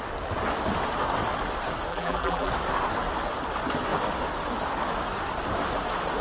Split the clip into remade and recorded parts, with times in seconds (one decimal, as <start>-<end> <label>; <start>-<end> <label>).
0.0-1.9 recorded; 1.9-2.5 remade; 2.5-6.2 recorded